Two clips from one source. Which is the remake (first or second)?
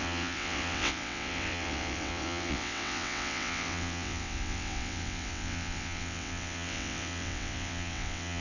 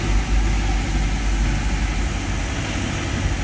first